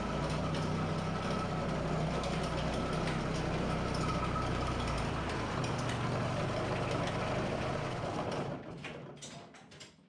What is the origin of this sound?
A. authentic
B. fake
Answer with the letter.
A